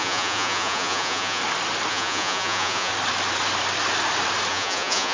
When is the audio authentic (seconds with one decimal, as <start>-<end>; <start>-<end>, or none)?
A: 1.4-1.9; 2.9-4.5